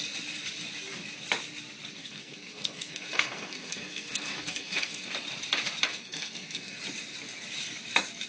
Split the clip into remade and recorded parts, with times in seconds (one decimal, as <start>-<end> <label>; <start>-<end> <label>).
0.0-2.0 recorded; 2.0-5.1 remade; 5.1-5.9 recorded; 5.9-6.8 remade; 6.8-8.3 recorded